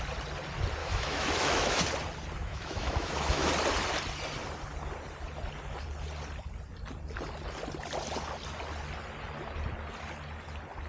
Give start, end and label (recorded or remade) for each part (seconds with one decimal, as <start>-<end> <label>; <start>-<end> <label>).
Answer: 0.0-0.8 recorded; 0.8-1.8 remade; 1.8-2.4 recorded; 2.4-3.5 remade; 3.5-10.9 recorded